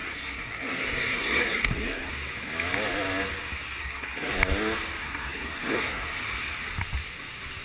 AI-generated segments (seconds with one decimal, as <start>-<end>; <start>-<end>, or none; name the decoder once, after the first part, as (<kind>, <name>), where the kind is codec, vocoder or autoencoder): 0.0-2.1 (codec, SNAC); 3.8-4.3; 5.0-6.2